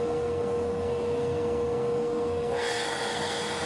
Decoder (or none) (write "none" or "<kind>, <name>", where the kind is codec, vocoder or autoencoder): codec, SNAC